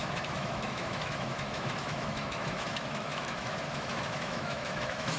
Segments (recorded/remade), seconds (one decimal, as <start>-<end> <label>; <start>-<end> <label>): 0.0-5.2 remade